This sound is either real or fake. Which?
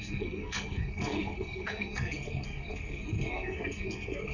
fake